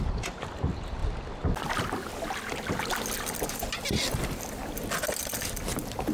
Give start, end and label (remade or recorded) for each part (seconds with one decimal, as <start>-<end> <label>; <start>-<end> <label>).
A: 0.0-6.1 recorded